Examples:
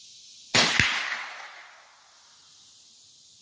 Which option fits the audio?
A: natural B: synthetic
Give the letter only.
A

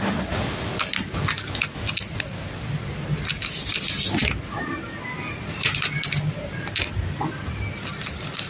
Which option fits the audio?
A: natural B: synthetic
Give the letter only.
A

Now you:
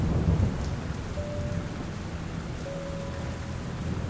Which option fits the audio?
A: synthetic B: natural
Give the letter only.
B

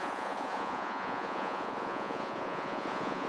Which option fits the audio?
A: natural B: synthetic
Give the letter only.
B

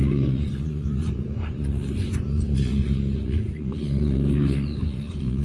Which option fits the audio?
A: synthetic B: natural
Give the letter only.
A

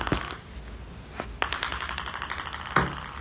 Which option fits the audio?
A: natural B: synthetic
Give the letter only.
A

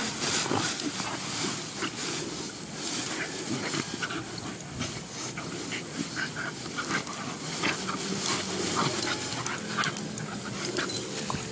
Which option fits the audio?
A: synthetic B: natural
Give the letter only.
B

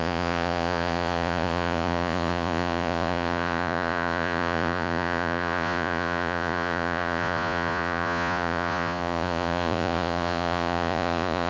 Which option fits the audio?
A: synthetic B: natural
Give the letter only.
A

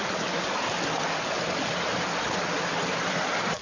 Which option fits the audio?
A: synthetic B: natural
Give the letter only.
B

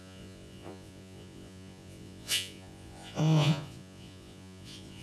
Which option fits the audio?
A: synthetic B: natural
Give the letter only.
A